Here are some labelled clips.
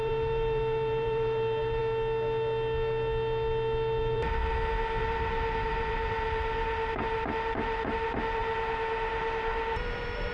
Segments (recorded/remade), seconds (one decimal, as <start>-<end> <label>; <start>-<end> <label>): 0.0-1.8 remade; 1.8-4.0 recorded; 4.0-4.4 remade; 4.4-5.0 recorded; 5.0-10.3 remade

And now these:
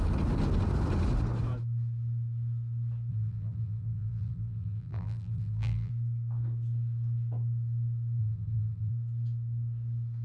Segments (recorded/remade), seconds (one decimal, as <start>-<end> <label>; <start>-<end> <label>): 0.0-3.1 recorded; 3.1-5.9 remade; 5.9-8.2 recorded; 8.2-8.9 remade; 8.9-10.2 recorded

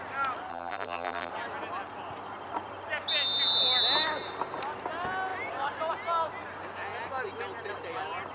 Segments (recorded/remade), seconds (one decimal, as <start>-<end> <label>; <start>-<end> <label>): 0.0-0.5 recorded; 0.5-1.3 remade; 1.3-8.3 recorded

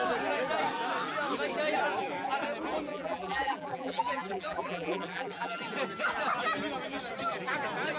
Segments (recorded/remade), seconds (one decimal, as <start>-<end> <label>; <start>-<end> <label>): 0.0-2.9 recorded; 2.9-5.6 remade; 5.6-8.0 recorded

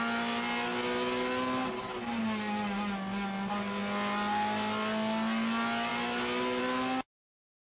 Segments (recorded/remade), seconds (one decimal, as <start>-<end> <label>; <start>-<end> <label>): 0.0-7.7 recorded